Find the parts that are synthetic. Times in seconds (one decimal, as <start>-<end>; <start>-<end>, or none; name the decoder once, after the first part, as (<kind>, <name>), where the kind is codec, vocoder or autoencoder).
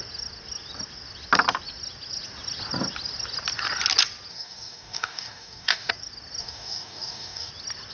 4.3-5.9 (codec, DAC); 6.4-7.5